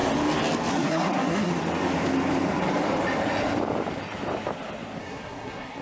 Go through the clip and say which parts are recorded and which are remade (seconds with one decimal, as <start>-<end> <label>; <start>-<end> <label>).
0.0-0.7 recorded; 0.7-1.5 remade; 1.5-5.0 recorded; 5.0-5.8 remade